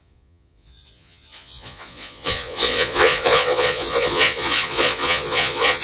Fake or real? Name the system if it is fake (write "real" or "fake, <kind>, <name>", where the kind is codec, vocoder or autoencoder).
fake, vocoder, Vocos